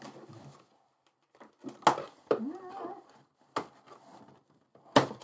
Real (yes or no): yes